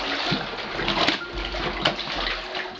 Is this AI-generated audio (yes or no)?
no